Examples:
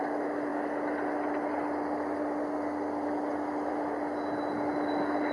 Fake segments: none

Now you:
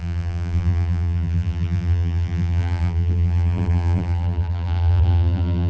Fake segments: 0.0-5.7 (vocoder, BigVGAN v2)